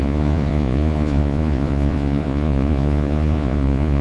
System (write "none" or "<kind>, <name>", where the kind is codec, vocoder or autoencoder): vocoder, Vocos